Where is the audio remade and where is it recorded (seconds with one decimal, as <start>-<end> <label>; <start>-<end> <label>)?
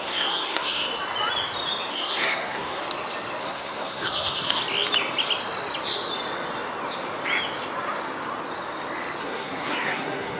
0.0-0.9 remade; 0.9-1.9 recorded; 1.9-2.8 remade; 2.8-3.4 recorded; 3.4-4.6 remade; 4.6-9.2 recorded; 9.2-10.4 remade